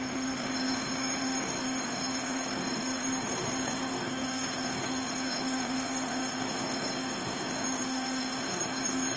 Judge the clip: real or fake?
fake